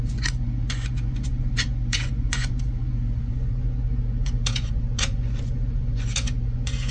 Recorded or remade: remade